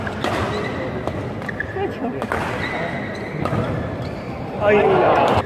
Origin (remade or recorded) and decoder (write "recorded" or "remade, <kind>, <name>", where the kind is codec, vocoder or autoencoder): recorded